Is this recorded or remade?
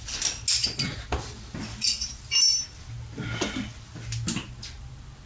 recorded